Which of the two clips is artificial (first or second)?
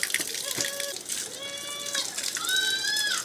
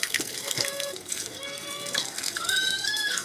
second